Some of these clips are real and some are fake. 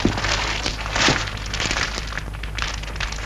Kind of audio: real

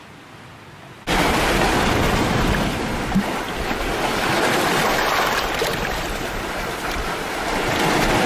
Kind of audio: real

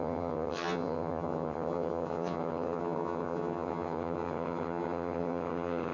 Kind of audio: fake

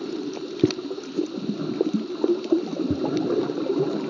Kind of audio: real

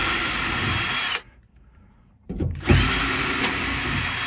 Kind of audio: fake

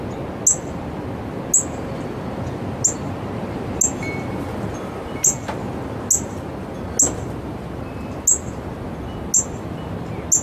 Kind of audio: real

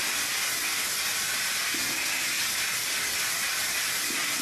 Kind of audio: real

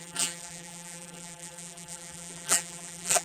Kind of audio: fake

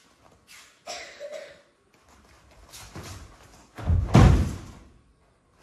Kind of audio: real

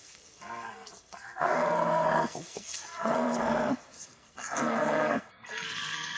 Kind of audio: fake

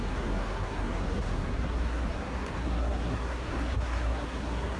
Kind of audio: fake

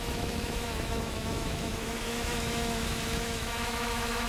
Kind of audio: fake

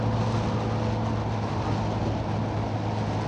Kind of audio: real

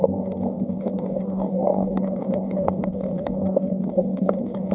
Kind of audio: fake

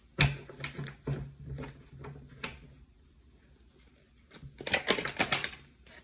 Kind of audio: real